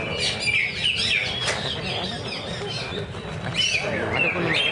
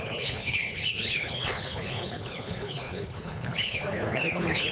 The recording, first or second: first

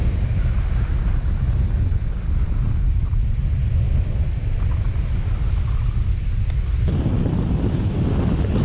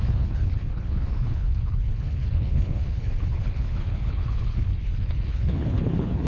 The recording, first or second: first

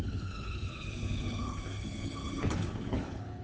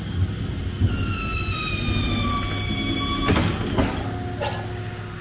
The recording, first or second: second